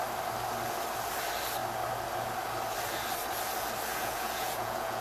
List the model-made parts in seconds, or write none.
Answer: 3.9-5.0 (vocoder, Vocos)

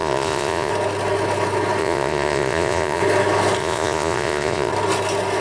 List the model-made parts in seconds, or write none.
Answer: 0.0-0.7 (vocoder, Vocos); 1.8-3.0; 3.6-4.7

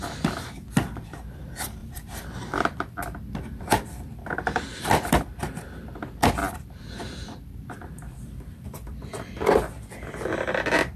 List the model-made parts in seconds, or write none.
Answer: 1.8-5.6 (vocoder, BigVGAN v2); 6.4-9.4